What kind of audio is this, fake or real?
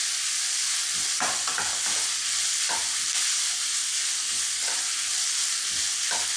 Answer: real